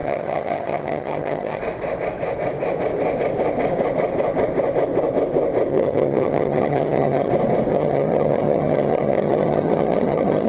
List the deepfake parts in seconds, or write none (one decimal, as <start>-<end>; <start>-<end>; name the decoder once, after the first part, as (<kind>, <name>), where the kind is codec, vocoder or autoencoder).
0.0-1.6 (vocoder, HiFi-GAN); 5.7-7.3; 7.7-10.5